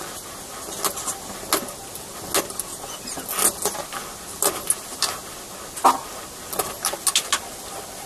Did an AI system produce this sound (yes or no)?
no